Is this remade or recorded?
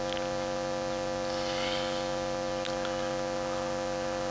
recorded